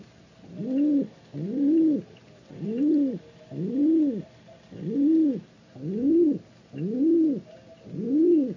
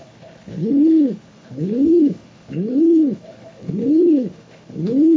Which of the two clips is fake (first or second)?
second